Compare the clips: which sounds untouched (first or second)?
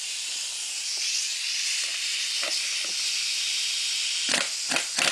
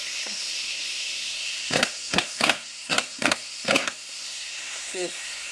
first